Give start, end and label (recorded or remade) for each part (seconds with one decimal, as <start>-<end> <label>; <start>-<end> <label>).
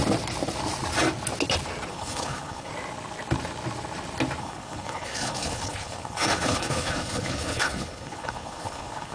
0.0-1.9 recorded; 1.9-2.7 remade; 2.7-4.4 recorded; 4.4-9.1 remade